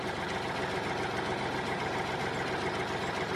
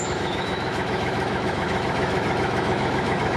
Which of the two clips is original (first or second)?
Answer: first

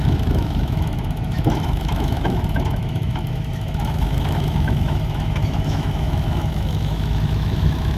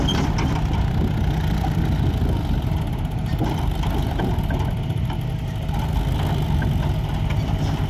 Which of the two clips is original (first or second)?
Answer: second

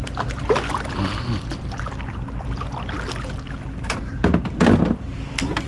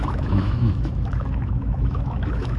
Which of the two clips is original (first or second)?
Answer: first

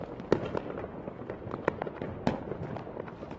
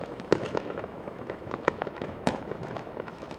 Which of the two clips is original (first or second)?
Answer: first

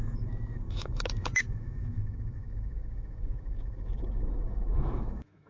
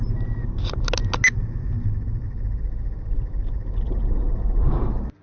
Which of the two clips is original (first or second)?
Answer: second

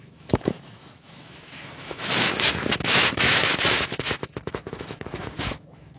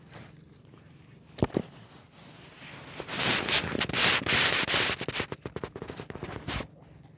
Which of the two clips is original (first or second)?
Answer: second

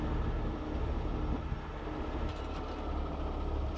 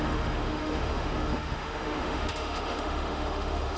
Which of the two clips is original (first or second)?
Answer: first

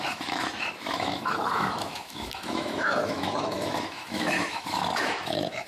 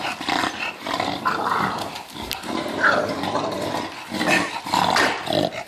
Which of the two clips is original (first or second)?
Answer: second